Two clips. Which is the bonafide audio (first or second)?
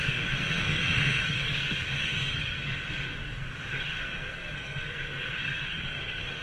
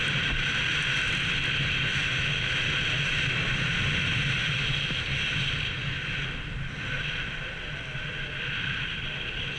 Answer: second